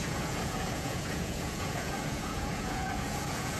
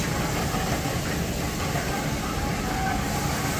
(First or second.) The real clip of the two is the second